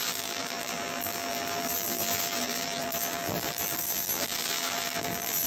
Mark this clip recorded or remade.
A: remade